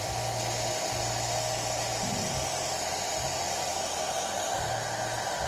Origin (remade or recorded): recorded